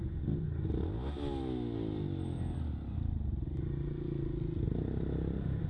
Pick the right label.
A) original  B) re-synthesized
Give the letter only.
A